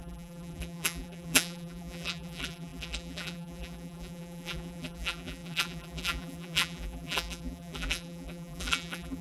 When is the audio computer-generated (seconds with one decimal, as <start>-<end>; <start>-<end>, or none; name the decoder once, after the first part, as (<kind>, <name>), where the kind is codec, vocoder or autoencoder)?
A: 0.0-9.2 (vocoder, BigVGAN v2)